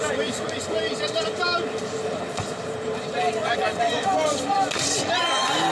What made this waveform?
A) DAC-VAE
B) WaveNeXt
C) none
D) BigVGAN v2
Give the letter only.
D